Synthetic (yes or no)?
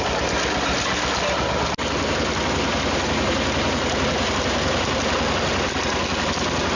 no